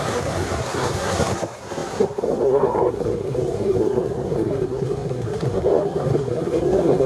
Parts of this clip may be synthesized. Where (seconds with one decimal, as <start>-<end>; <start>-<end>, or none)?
0.0-7.1